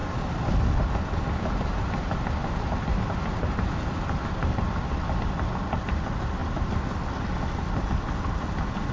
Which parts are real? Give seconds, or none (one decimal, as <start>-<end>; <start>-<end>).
0.0-8.9